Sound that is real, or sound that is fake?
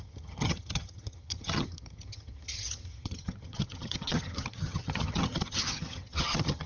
fake